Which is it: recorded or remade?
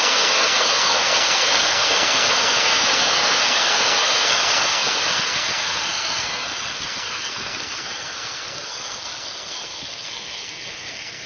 remade